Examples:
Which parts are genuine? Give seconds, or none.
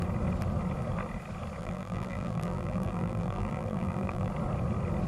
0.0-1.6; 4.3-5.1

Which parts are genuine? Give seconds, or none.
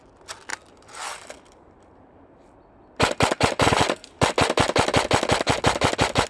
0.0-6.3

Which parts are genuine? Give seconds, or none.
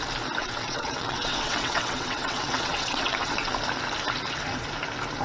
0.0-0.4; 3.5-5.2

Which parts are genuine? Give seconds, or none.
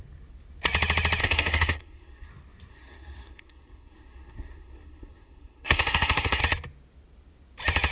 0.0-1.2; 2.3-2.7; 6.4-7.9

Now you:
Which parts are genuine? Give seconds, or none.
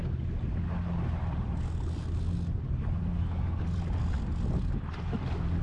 0.0-5.6